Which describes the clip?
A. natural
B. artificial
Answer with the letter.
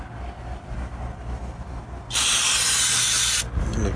A